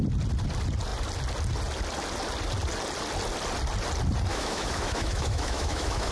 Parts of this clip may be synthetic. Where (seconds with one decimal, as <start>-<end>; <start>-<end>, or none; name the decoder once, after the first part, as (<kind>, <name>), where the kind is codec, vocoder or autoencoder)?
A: 4.3-6.1 (autoencoder, DAC-VAE)